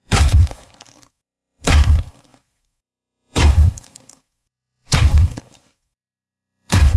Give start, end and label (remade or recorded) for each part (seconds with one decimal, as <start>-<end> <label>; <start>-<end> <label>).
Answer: 0.0-7.0 remade